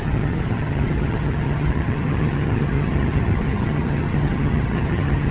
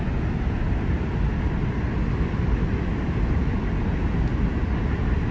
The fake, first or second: first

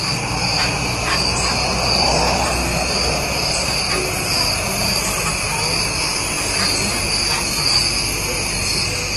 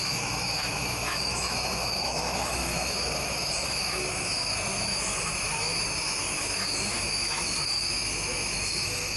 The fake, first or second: second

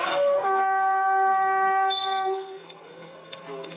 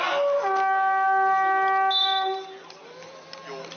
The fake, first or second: first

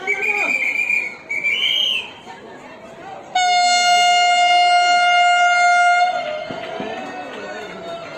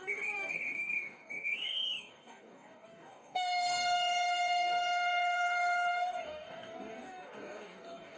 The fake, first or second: second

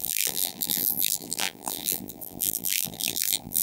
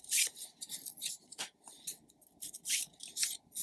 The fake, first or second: first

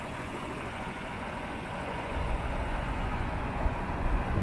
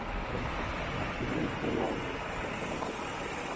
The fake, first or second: first